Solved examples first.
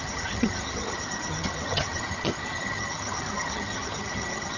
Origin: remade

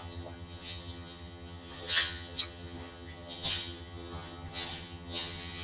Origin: remade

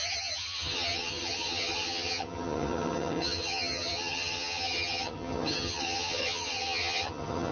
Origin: remade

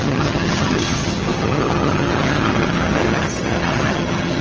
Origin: remade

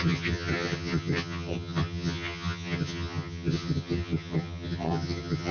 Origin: remade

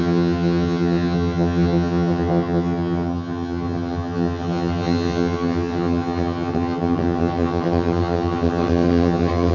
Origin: remade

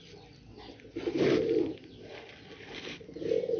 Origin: recorded